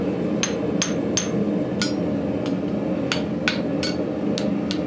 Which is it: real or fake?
real